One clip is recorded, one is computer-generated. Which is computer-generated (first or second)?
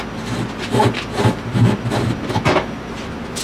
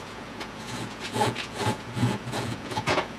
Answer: second